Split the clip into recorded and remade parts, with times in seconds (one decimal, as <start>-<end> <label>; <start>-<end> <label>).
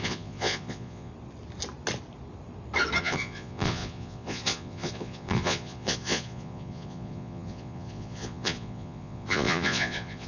0.0-1.1 remade; 1.1-3.0 recorded; 3.0-10.3 remade